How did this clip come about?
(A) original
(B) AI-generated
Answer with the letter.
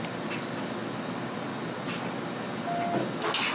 A